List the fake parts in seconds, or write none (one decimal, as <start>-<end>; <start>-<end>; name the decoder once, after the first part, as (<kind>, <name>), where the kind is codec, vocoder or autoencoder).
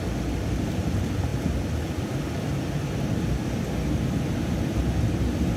none